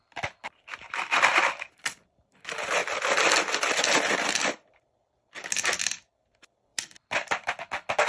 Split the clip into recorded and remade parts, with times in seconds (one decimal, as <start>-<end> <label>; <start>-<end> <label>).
0.0-1.3 remade; 1.3-2.8 recorded; 2.8-3.3 remade; 3.3-6.7 recorded; 6.7-7.5 remade; 7.5-8.1 recorded